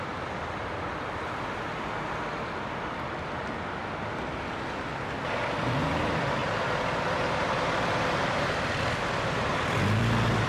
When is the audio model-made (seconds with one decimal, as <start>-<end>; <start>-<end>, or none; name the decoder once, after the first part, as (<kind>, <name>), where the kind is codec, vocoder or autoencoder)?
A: 0.0-1.7 (vocoder, BigVGAN v2); 5.5-10.5